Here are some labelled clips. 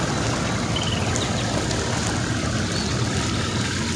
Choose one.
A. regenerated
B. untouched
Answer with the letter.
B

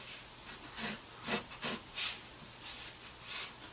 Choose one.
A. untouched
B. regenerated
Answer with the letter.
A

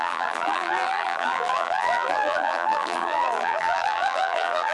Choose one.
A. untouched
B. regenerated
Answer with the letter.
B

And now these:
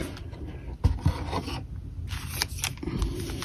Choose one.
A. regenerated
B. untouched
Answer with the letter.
B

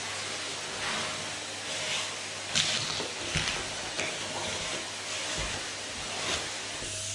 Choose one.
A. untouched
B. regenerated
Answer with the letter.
A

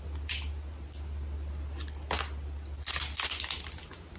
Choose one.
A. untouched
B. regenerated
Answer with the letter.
A